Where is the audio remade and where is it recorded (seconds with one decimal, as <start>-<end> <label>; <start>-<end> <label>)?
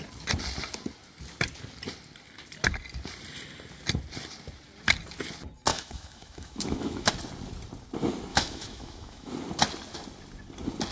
0.0-5.7 recorded; 5.7-7.1 remade; 7.1-8.3 recorded; 8.3-9.3 remade; 9.3-10.9 recorded